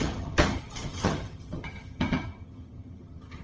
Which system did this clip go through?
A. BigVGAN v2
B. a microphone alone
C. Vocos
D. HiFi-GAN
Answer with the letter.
D